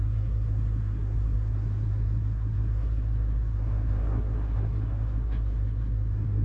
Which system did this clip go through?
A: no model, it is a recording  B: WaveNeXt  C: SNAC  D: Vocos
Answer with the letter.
C